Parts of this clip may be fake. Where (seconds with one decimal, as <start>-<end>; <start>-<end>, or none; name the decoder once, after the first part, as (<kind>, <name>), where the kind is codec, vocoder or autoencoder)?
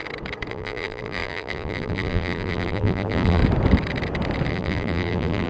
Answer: 0.5-3.4 (vocoder, BigVGAN v2); 4.5-5.5